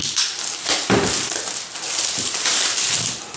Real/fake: fake